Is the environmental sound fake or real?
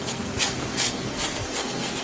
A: fake